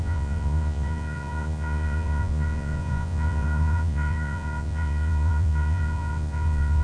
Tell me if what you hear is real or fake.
fake